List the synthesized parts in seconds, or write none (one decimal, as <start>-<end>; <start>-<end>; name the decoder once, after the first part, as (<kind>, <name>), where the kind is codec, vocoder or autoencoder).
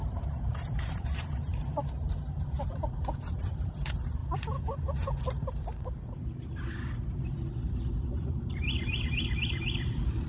0.0-4.2 (vocoder, BigVGAN v2); 8.0-10.3